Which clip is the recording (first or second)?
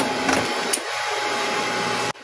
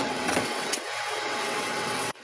first